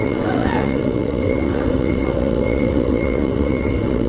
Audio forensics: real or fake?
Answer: fake